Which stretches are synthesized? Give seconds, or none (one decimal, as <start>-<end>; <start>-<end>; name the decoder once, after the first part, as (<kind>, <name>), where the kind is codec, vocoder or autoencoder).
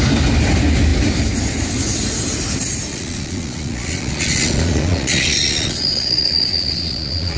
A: 2.9-7.4 (vocoder, Vocos)